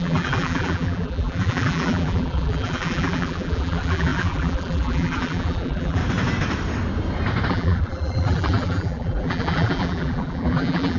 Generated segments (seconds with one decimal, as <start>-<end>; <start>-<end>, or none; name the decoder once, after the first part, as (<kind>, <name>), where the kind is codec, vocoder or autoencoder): 0.0-6.0 (vocoder, BigVGAN v2); 7.5-11.0